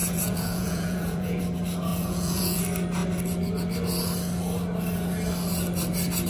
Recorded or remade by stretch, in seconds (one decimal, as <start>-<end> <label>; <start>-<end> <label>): 0.0-1.4 remade; 1.4-1.9 recorded; 1.9-2.6 remade; 2.6-6.3 recorded